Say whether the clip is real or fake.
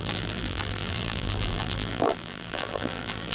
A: fake